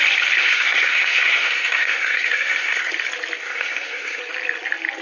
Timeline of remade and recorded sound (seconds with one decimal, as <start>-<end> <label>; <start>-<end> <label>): 0.0-0.4 recorded; 0.4-2.9 remade; 2.9-3.4 recorded; 3.4-4.2 remade; 4.2-5.0 recorded